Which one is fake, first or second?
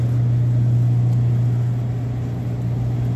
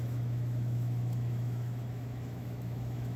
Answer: second